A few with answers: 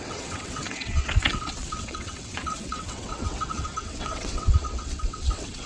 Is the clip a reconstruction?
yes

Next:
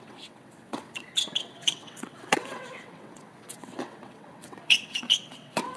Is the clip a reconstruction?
yes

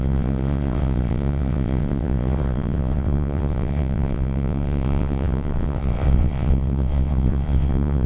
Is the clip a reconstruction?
yes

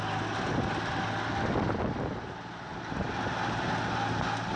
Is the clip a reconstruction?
no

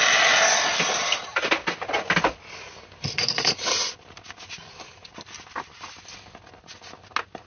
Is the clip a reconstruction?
no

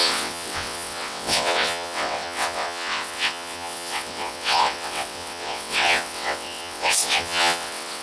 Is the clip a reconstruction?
yes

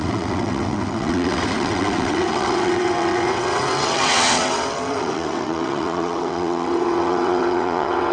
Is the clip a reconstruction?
yes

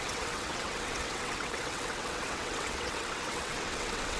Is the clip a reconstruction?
yes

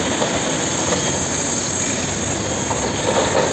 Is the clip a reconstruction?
no